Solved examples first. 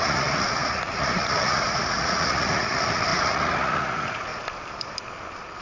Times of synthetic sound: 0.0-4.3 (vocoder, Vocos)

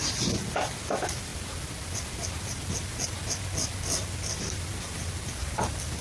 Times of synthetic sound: 0.0-0.8 (vocoder, BigVGAN v2); 1.3-4.9

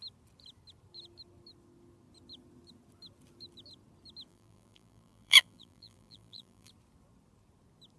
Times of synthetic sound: 4.3-6.7 (vocoder, BigVGAN v2)

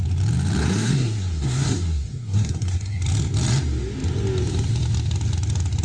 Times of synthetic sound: 0.6-3.0 (codec, SNAC)

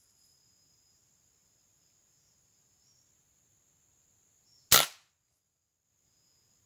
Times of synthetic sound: none